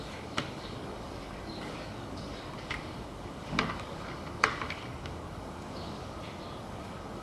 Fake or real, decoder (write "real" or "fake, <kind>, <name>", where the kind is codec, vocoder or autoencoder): fake, codec, DAC